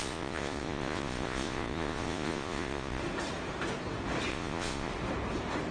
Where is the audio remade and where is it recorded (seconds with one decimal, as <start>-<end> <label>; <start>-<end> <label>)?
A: 0.0-3.0 remade; 3.0-4.3 recorded; 4.3-4.9 remade; 4.9-5.7 recorded